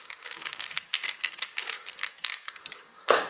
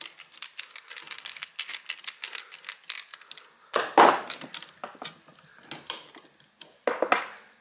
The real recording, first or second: second